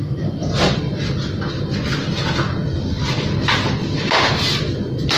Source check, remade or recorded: recorded